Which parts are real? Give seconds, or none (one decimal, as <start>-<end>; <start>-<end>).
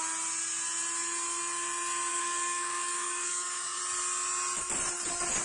0.0-2.1; 3.8-5.4